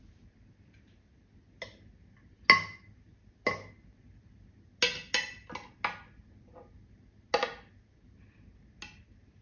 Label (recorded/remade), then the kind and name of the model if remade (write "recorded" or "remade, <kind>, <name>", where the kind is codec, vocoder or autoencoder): recorded